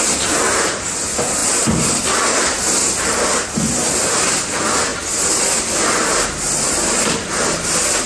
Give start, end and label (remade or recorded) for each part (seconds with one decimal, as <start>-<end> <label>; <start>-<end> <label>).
0.0-8.1 recorded